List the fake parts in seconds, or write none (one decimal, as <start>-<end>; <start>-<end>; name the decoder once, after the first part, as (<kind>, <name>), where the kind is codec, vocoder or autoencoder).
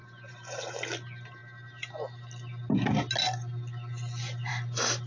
0.0-0.7 (vocoder, BigVGAN v2)